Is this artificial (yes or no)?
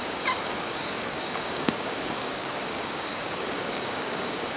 yes